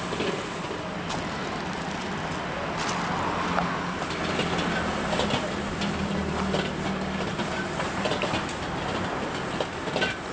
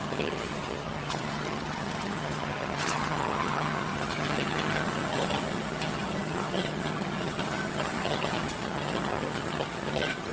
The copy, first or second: second